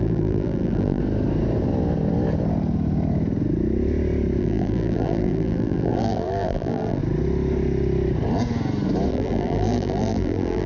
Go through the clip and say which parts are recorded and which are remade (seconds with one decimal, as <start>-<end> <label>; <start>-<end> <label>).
0.0-1.0 remade; 1.0-4.4 recorded; 4.4-7.0 remade; 7.0-9.1 recorded; 9.1-10.7 remade

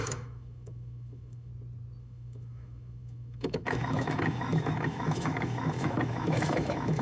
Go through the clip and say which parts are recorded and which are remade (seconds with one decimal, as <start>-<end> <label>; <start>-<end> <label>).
0.0-1.5 remade; 1.5-2.0 recorded; 2.0-7.0 remade

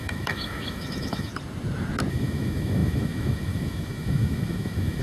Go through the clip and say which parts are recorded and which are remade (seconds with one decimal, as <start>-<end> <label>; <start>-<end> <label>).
0.0-1.3 remade; 1.3-2.1 recorded; 2.1-5.0 remade

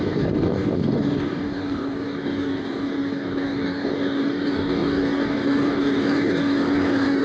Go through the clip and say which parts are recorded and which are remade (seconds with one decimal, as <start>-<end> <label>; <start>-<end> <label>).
0.0-7.2 remade

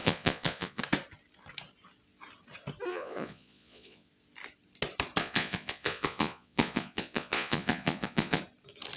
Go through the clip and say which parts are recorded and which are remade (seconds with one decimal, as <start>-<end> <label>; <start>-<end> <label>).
0.0-0.8 remade; 0.8-2.9 recorded; 2.9-4.1 remade; 4.1-5.2 recorded; 5.2-8.4 remade; 8.4-9.0 recorded

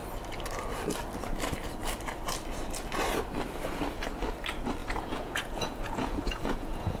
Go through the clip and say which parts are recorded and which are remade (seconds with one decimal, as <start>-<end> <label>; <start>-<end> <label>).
0.0-4.8 recorded; 4.8-7.0 remade

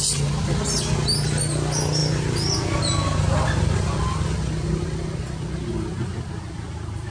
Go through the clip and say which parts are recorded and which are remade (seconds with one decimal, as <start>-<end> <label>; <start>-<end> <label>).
0.0-7.1 recorded